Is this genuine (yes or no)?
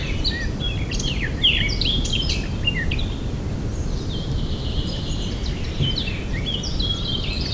yes